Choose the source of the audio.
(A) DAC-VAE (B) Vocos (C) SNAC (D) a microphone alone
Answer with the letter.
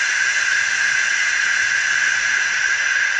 D